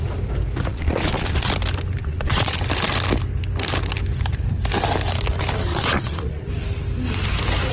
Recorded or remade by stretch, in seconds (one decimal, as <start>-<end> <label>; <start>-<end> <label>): 0.0-0.7 recorded; 0.7-1.5 remade; 1.5-2.0 recorded; 2.0-2.5 remade; 2.5-5.7 recorded; 5.7-6.5 remade; 6.5-7.7 recorded